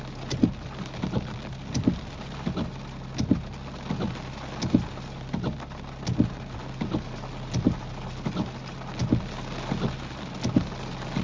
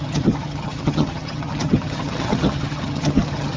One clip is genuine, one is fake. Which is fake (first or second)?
second